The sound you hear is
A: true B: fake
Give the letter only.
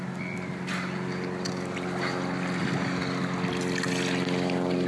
A